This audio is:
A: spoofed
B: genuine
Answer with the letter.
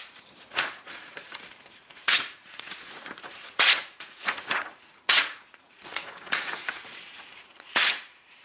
A